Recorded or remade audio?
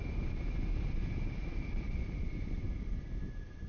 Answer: recorded